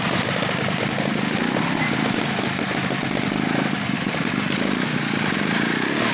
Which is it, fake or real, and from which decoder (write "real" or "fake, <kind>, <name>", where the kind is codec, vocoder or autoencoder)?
real